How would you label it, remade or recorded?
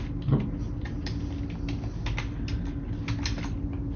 recorded